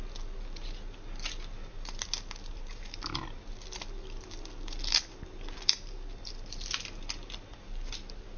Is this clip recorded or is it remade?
recorded